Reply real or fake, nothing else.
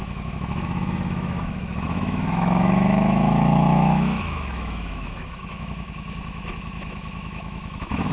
fake